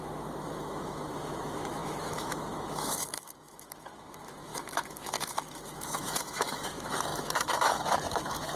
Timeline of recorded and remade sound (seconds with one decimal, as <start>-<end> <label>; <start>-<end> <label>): 0.0-8.6 remade